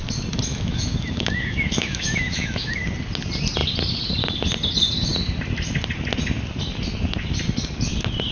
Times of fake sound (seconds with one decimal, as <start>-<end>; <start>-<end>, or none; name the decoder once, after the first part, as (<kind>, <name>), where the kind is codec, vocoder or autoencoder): 0.5-2.8 (autoencoder, DAC-VAE)